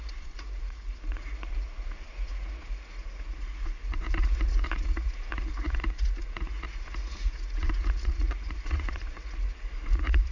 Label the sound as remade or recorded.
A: remade